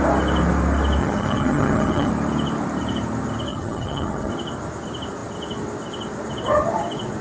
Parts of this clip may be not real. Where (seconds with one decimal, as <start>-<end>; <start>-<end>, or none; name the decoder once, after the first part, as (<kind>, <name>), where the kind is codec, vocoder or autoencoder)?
1.0-2.1 (vocoder, HiFi-GAN); 3.5-4.3